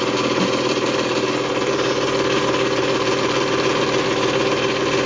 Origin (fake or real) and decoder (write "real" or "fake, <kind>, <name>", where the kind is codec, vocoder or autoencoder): fake, vocoder, BigVGAN v2